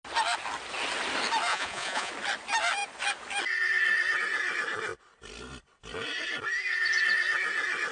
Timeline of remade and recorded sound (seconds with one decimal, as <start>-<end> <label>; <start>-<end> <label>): 0.0-1.5 recorded; 1.5-2.1 remade; 2.1-7.9 recorded